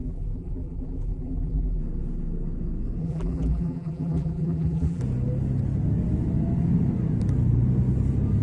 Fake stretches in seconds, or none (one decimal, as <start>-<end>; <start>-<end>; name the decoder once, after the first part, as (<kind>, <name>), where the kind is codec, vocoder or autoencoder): 0.0-1.8 (vocoder, BigVGAN v2); 3.0-5.0